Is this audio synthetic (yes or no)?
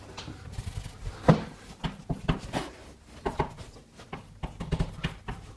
no